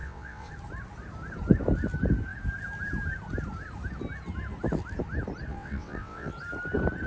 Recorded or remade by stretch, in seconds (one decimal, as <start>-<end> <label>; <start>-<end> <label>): 0.0-0.5 remade; 0.5-5.5 recorded; 5.5-6.3 remade; 6.3-7.1 recorded